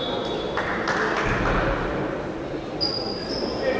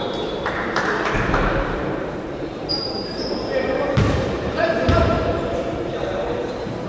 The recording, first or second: first